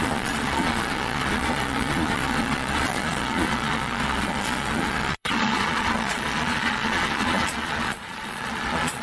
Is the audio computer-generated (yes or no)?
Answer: yes